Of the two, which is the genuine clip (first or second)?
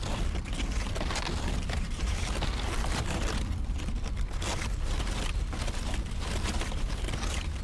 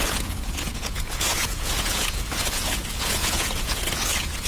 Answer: first